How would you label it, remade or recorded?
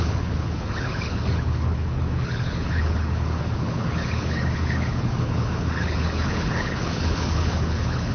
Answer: remade